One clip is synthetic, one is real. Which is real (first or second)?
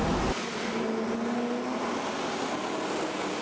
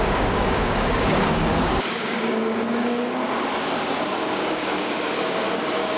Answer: first